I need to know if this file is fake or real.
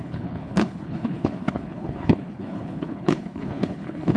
fake